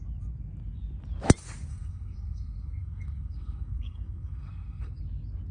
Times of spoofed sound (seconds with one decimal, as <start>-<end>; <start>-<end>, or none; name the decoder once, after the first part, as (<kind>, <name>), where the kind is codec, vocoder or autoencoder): 1.7-5.0 (codec, SNAC)